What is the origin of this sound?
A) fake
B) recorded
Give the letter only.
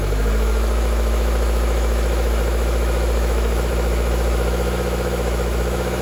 A